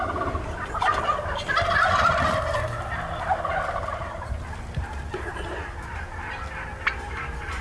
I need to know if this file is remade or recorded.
recorded